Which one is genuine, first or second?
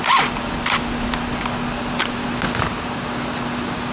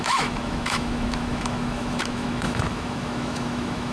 first